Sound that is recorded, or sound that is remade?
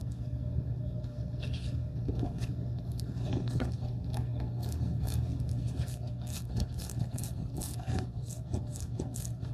remade